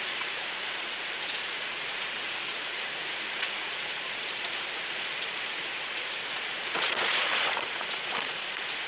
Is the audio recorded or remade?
remade